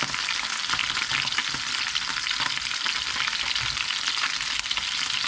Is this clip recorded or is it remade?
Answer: recorded